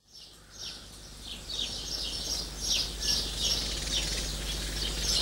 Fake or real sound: real